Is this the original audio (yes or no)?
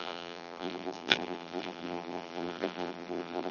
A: no